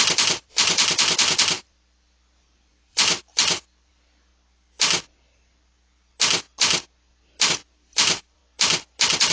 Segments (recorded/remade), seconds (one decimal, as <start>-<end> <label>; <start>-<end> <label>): 0.0-0.8 remade; 0.8-1.6 recorded; 1.6-4.3 remade; 4.3-7.5 recorded; 7.5-8.4 remade; 8.4-9.3 recorded